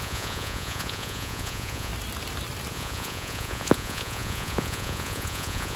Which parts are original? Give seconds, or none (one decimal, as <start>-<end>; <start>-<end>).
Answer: 1.9-2.7